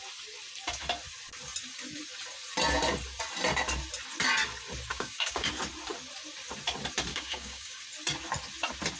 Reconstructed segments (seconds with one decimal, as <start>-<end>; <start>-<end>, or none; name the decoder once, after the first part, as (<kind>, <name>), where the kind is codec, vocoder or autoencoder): 4.9-5.5 (codec, DAC); 7.1-7.8